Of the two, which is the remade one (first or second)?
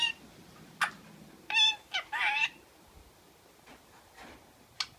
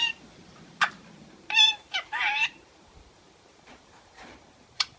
second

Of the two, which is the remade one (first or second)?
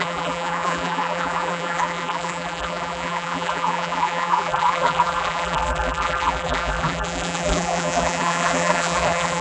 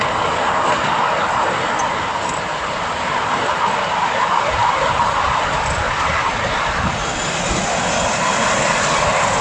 first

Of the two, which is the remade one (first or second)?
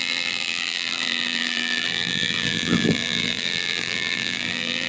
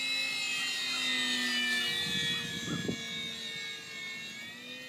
first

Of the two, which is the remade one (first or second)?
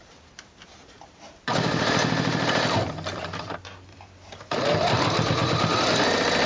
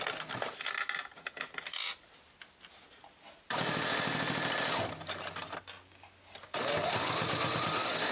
first